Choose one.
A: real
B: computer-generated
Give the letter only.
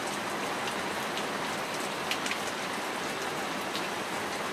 A